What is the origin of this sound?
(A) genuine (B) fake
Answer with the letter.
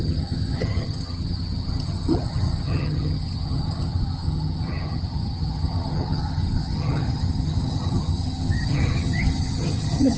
B